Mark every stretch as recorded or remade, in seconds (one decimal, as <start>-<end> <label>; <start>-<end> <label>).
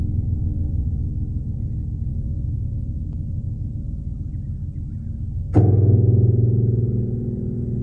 0.0-2.1 recorded; 2.1-2.6 remade; 2.6-7.8 recorded